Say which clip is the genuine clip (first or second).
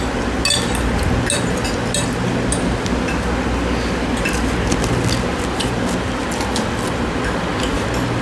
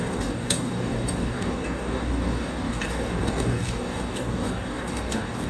first